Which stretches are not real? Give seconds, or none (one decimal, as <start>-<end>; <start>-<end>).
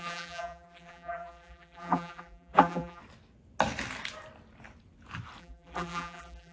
0.0-3.0; 5.4-6.5